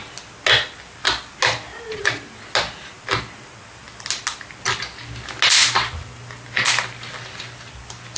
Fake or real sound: real